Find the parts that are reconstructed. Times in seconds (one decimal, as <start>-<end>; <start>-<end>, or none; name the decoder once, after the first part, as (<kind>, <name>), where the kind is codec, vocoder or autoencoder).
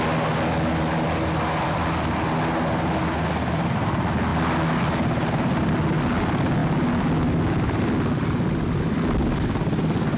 none